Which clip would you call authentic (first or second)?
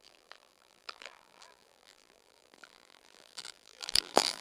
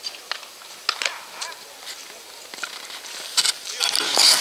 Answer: second